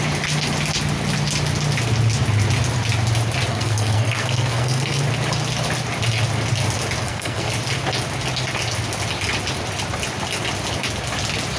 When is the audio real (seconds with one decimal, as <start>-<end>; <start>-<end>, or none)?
0.0-3.5; 5.0-7.0; 7.5-11.6